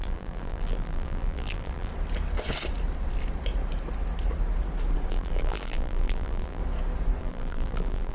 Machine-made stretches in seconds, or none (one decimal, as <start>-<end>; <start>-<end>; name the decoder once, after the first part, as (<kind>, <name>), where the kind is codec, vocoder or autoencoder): 0.0-1.9 (vocoder, BigVGAN v2); 5.1-6.6; 7.2-8.1